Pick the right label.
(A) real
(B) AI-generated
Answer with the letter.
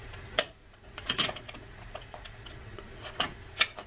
B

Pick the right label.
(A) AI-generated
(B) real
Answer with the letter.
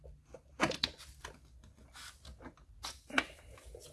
B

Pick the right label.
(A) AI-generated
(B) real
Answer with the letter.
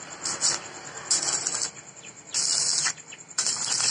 B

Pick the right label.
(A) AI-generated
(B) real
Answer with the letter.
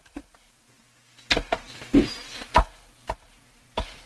B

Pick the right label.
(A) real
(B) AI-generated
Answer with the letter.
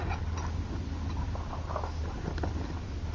A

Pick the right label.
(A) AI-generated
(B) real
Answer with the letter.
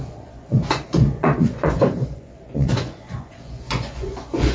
A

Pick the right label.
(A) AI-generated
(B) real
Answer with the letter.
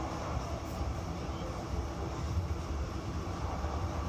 A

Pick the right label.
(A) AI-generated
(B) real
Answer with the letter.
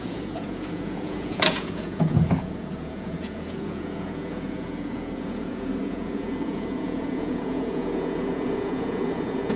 A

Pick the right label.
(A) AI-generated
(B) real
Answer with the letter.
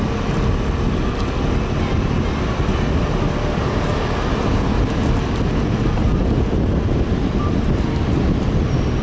B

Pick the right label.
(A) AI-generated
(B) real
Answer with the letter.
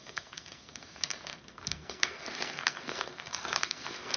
A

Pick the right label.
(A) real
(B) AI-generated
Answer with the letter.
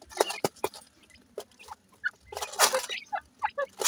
A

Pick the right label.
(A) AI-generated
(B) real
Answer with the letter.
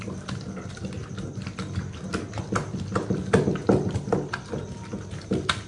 B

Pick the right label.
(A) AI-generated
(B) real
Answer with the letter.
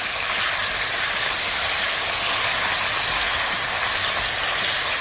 B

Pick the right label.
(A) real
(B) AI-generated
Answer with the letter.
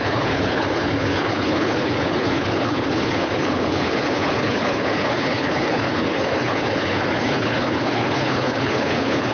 B